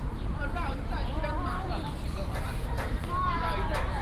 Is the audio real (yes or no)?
no